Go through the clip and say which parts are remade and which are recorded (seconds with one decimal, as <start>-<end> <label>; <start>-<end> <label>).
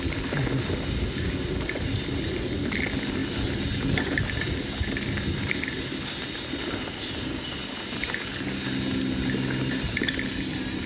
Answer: 0.0-10.9 recorded